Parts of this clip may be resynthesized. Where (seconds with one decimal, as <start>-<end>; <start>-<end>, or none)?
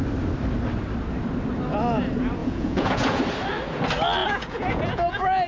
2.4-3.2; 4.2-5.5